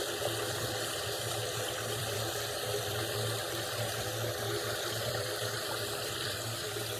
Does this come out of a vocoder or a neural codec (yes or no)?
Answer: yes